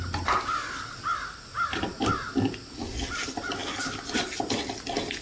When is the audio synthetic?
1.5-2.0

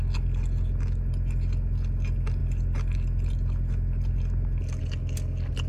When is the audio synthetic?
none

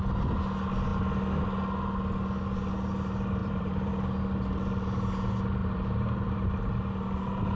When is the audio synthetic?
3.4-3.9; 5.6-6.5

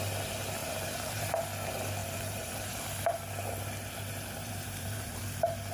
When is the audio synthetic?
0.6-1.3; 2.0-2.7; 4.4-5.2

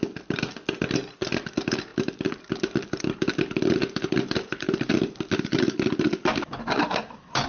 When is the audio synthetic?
none

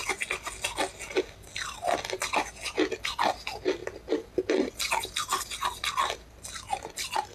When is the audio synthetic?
none

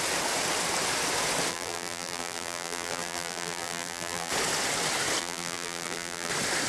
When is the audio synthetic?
1.5-4.3; 5.2-6.3